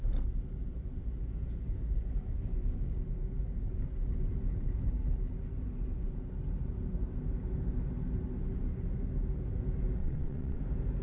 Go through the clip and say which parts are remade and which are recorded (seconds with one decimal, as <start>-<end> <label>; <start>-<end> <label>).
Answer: 0.0-10.0 recorded; 10.0-10.6 remade; 10.6-11.0 recorded